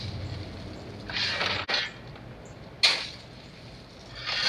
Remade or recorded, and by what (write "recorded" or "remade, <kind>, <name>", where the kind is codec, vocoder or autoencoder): recorded